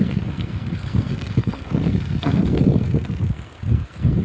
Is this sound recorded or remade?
remade